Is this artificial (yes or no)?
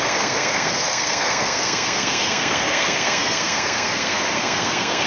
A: yes